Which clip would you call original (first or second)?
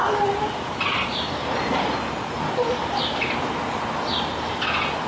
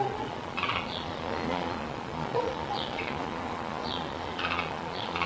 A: first